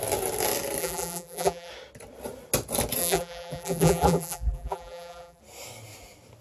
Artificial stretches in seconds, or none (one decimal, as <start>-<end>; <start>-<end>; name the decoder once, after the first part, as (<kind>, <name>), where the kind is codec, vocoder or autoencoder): 0.8-1.7 (vocoder, BigVGAN v2); 3.0-5.4